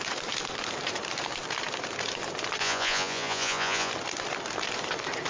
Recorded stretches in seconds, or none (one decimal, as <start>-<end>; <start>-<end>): 0.0-2.6; 3.9-5.3